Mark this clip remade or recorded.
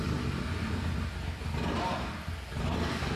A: recorded